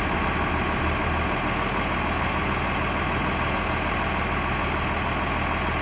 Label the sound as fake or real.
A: real